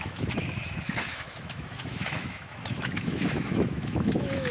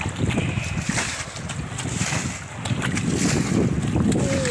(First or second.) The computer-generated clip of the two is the first